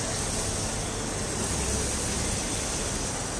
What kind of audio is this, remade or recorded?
recorded